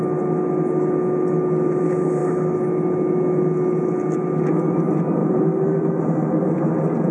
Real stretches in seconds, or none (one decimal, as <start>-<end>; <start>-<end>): 0.0-5.2; 6.0-7.1